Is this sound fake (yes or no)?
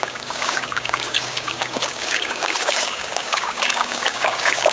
yes